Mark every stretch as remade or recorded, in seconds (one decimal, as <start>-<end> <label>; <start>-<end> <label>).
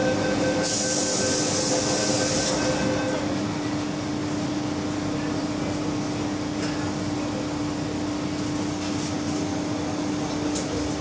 0.0-11.0 recorded